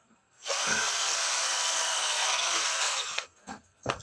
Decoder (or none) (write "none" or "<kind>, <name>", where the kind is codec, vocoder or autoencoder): codec, SNAC